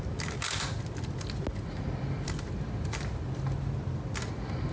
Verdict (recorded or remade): recorded